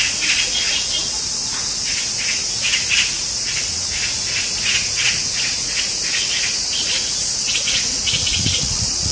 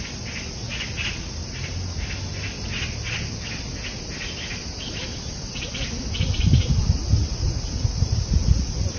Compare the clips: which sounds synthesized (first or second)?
first